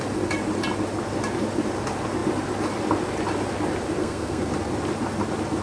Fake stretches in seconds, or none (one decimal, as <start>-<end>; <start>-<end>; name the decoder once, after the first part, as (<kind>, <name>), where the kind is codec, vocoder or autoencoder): 4.0-4.5 (codec, SNAC)